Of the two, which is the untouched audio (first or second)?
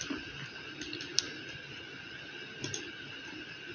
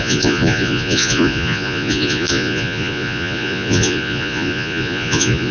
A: first